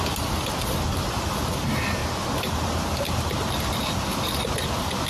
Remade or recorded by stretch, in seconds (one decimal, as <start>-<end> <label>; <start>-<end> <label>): 0.0-5.1 recorded